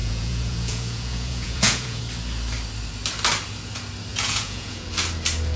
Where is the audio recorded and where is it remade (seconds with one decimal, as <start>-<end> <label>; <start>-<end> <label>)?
0.0-2.0 remade; 2.0-4.1 recorded; 4.1-4.9 remade; 4.9-5.6 recorded